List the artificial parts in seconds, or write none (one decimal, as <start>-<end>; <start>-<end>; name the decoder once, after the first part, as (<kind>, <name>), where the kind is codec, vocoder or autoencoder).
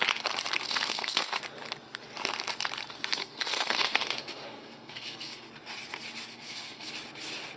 0.6-1.4 (codec, SNAC); 3.2-5.5; 6.3-6.9